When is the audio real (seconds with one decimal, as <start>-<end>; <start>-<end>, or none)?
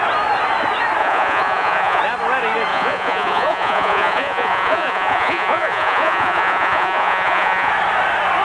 0.0-1.0; 2.0-2.7; 7.7-8.4